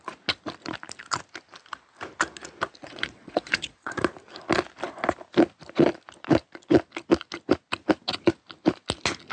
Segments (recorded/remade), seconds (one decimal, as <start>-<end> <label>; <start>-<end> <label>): 0.0-2.8 recorded; 2.8-4.0 remade; 4.0-9.3 recorded